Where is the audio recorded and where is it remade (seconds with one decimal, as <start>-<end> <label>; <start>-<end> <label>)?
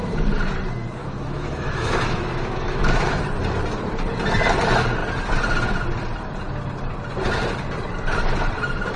0.0-1.0 recorded; 1.0-3.2 remade; 3.2-9.0 recorded